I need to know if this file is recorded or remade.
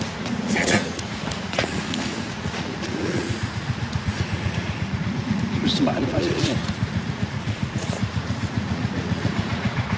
remade